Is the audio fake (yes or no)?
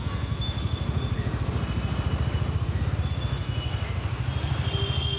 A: no